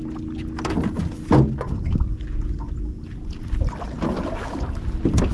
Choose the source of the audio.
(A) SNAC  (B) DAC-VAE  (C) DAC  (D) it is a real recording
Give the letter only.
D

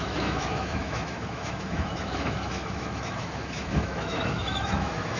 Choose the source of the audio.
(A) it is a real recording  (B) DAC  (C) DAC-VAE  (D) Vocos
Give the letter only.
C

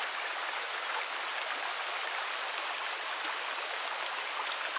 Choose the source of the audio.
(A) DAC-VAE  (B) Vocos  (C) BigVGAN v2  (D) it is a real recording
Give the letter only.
D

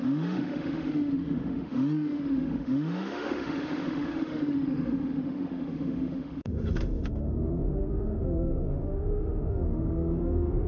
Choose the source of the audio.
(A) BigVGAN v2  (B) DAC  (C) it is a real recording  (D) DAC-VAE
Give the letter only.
D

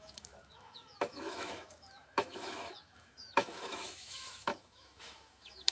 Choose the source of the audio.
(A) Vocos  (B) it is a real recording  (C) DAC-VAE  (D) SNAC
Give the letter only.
C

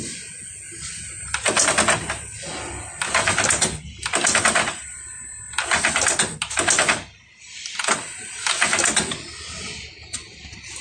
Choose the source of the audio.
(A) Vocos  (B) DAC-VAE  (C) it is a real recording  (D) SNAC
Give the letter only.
C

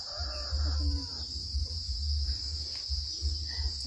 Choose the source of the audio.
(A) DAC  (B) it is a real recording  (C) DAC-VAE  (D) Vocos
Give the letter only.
B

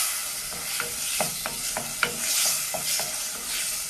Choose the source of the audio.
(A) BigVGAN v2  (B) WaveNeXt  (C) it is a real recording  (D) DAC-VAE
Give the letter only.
C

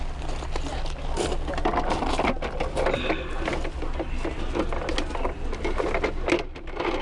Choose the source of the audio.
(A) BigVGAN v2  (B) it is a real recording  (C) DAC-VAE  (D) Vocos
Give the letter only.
B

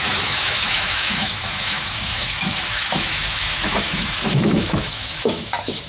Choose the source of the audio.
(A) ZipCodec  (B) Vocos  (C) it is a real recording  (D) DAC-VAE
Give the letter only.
D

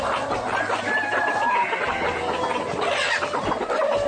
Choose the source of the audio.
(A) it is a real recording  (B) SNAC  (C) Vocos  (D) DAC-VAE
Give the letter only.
A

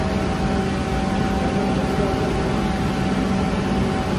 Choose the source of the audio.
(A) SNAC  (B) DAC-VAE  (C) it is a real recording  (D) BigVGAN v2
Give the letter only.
C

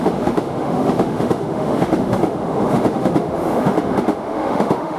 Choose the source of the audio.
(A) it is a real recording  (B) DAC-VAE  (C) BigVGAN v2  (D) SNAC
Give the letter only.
B